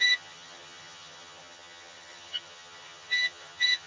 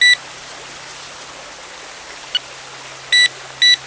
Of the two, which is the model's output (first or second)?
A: first